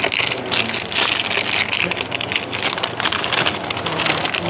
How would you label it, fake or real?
real